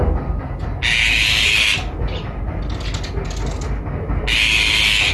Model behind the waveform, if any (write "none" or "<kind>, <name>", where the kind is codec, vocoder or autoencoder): none